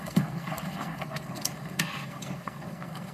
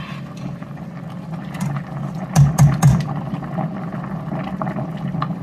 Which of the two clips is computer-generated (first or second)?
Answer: first